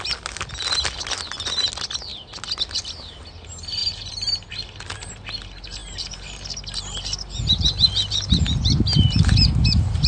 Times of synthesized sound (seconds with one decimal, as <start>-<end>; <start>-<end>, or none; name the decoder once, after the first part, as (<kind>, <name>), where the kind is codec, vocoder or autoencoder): none